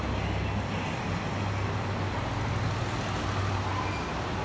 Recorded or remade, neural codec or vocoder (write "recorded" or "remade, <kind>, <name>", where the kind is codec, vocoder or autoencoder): recorded